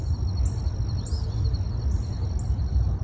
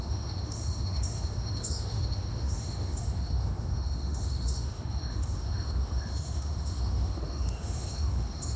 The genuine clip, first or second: first